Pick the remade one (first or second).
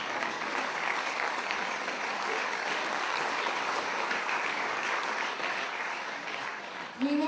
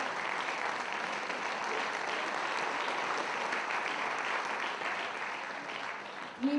first